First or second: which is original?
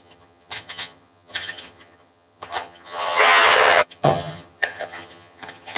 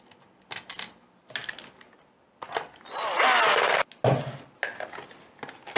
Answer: second